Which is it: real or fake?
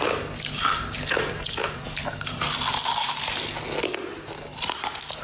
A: real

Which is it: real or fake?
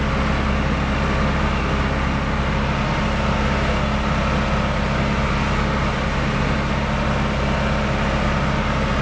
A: real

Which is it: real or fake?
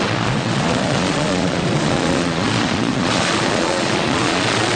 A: fake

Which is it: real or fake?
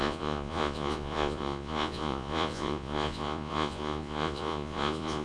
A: fake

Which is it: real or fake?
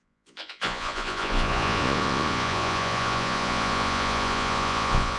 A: fake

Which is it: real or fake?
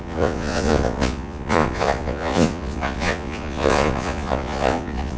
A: fake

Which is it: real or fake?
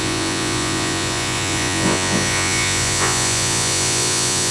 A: fake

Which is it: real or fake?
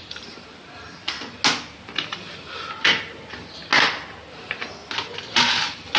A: real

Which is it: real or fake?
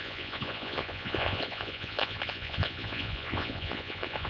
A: fake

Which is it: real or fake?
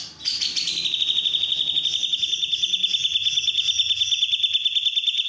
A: real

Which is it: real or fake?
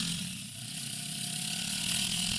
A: fake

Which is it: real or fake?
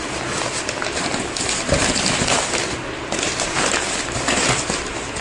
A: real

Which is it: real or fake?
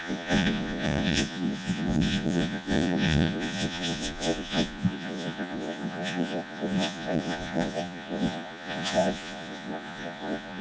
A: fake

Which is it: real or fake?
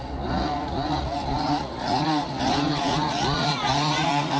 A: fake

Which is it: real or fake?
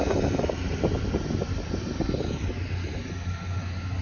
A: real